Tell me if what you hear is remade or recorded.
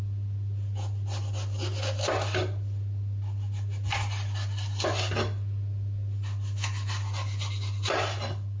recorded